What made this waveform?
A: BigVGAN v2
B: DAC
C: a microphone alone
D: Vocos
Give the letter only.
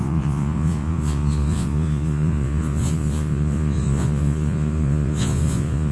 D